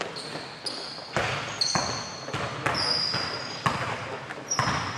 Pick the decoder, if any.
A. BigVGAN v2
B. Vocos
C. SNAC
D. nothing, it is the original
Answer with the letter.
D